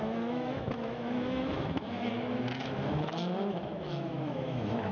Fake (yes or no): yes